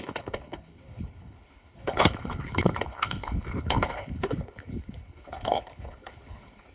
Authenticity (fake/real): fake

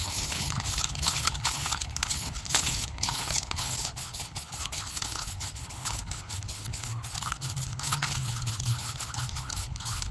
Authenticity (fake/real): fake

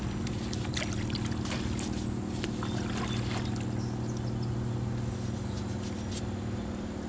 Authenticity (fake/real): real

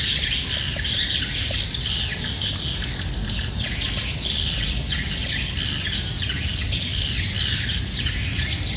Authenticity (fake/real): real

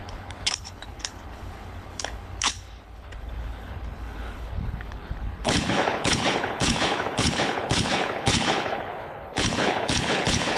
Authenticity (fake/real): fake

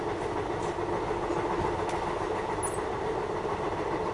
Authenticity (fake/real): real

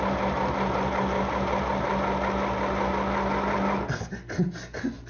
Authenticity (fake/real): real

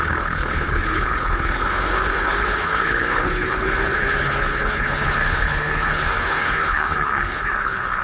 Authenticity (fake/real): fake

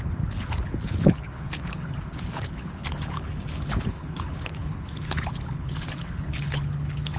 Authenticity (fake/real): fake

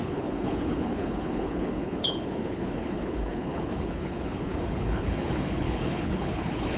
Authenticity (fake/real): fake